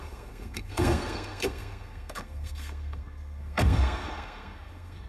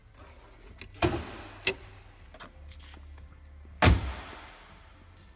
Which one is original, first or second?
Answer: second